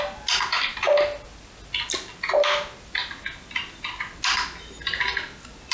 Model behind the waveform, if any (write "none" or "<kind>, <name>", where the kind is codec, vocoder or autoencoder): none